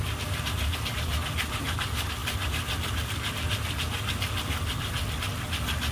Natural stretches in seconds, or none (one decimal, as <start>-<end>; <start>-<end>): 0.0-5.9